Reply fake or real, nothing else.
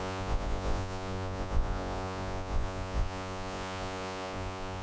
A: fake